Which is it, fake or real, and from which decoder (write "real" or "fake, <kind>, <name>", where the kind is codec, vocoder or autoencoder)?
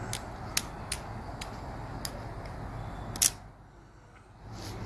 real